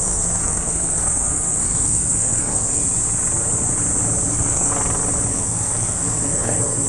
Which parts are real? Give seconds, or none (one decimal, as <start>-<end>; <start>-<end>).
2.8-4.3; 4.7-5.3